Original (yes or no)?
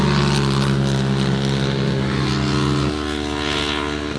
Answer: yes